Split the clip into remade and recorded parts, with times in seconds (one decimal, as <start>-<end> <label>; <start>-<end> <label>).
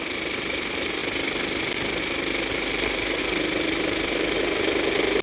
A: 0.0-1.0 remade; 1.0-2.0 recorded; 2.0-5.2 remade